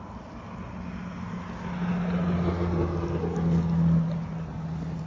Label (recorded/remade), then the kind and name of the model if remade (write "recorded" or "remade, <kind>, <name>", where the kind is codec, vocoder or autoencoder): recorded